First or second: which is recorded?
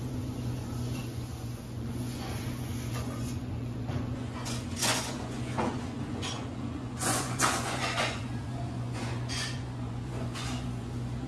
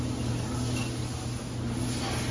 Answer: second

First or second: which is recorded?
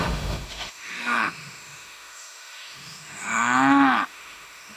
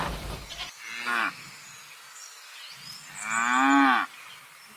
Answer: second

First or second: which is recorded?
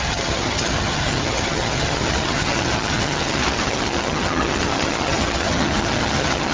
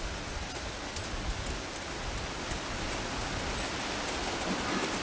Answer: second